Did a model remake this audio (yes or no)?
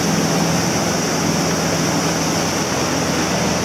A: no